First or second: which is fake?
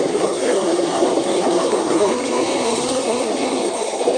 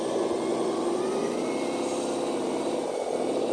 first